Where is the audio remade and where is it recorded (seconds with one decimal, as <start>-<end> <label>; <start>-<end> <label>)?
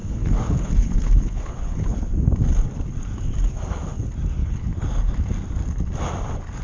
0.0-2.1 remade; 2.1-4.4 recorded; 4.4-5.1 remade; 5.1-6.6 recorded